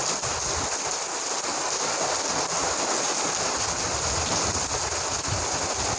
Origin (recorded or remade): recorded